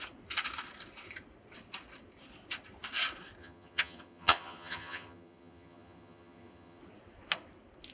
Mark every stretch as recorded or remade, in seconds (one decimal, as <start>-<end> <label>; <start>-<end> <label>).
0.0-3.4 recorded; 3.4-6.8 remade; 6.8-7.9 recorded